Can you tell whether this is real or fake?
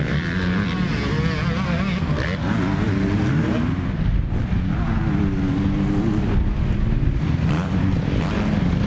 real